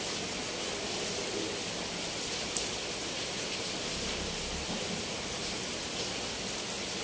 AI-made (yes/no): no